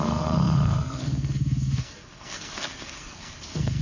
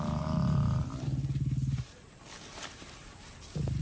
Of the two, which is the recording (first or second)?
second